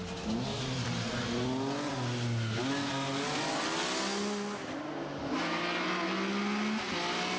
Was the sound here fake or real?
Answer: real